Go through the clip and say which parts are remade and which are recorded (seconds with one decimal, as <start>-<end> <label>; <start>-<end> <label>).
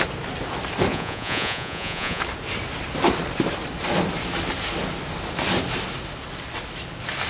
0.0-0.9 recorded; 0.9-2.2 remade; 2.2-7.3 recorded